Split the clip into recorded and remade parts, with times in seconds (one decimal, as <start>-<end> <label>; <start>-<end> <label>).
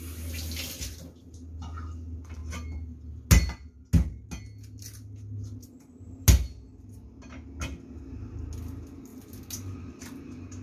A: 0.0-10.6 recorded